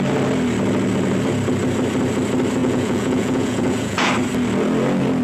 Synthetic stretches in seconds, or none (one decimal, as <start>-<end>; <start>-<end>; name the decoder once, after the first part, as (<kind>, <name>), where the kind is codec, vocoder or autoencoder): 2.6-4.1 (vocoder, Vocos)